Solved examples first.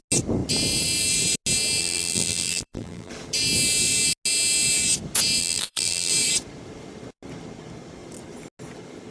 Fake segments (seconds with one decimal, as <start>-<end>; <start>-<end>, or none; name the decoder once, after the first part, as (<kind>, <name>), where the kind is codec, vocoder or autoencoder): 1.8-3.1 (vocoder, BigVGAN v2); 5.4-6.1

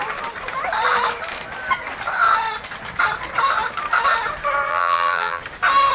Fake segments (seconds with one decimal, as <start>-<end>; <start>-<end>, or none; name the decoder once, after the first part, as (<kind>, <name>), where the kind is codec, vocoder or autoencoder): 4.7-5.4 (vocoder, BigVGAN v2)

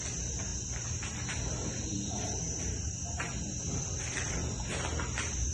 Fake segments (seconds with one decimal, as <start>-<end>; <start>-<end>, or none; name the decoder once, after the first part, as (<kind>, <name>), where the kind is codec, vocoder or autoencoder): none

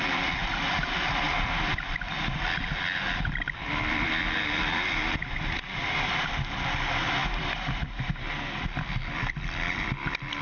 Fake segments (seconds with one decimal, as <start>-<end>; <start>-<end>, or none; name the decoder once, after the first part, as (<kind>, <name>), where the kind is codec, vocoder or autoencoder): 0.0-7.2 (vocoder, BigVGAN v2); 9.3-10.4